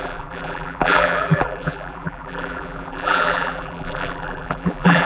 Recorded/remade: remade